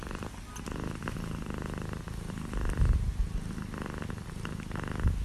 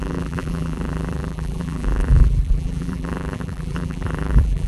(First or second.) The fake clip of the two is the second